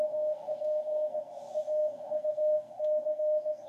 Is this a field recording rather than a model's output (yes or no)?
no